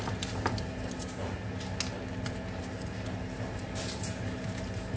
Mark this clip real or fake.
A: real